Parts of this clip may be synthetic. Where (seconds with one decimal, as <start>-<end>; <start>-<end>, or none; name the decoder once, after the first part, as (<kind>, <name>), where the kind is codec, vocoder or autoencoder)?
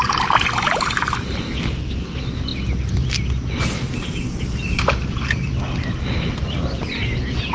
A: none